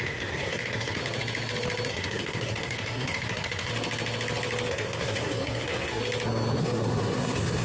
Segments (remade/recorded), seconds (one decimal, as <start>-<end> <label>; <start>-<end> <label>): 0.0-1.0 remade; 1.0-1.9 recorded; 1.9-3.7 remade; 3.7-4.7 recorded; 4.7-6.0 remade; 6.0-6.6 recorded; 6.6-7.6 remade